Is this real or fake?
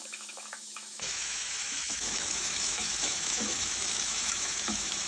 fake